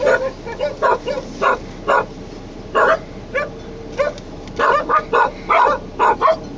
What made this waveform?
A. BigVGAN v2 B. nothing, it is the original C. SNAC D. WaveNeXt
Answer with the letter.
B